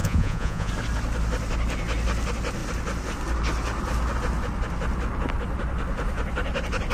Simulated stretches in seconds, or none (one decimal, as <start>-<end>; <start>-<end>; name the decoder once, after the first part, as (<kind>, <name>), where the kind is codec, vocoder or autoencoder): 0.0-0.7 (vocoder, Vocos)